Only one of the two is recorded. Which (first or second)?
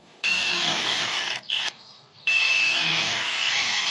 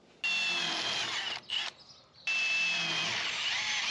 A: second